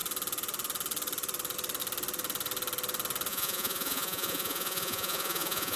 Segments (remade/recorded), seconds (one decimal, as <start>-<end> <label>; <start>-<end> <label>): 0.0-3.3 recorded; 3.3-5.8 remade